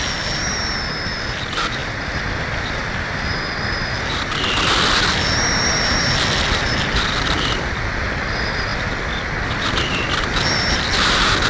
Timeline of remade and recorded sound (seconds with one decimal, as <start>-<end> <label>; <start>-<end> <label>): 0.0-11.5 recorded